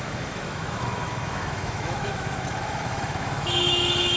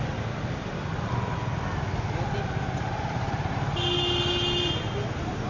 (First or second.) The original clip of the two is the second